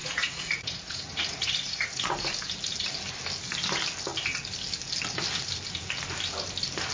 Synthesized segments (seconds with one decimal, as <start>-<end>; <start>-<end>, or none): 0.0-2.3